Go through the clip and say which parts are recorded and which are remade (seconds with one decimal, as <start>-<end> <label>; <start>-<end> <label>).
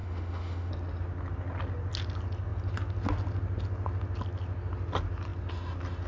0.0-0.7 remade; 0.7-6.1 recorded